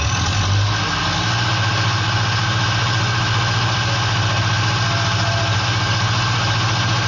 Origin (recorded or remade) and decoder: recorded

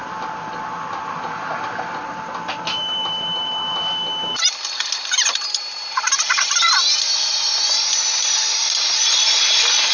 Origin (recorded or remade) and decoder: remade, vocoder, BigVGAN v2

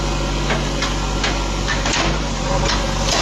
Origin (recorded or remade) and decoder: recorded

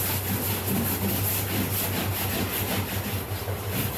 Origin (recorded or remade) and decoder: recorded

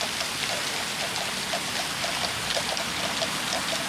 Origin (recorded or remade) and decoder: recorded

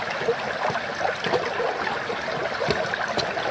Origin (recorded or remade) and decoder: recorded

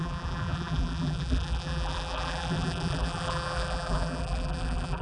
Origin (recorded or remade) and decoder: remade, vocoder, BigVGAN v2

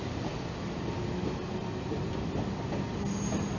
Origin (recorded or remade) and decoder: recorded